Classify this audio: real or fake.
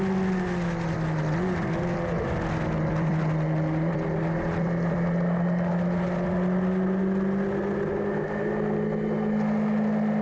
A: real